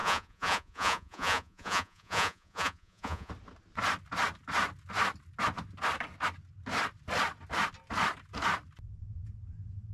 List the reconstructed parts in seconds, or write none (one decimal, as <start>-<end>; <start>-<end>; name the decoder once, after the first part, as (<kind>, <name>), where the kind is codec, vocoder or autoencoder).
0.0-3.3 (vocoder, Vocos)